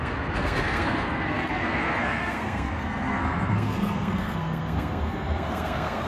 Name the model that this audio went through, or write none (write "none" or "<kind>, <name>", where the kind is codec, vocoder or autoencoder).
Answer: codec, SNAC